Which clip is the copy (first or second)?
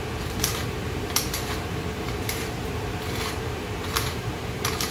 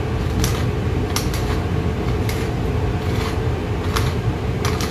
first